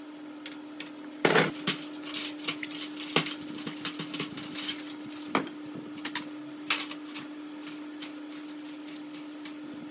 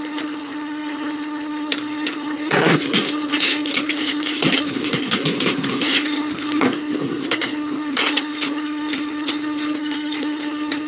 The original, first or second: first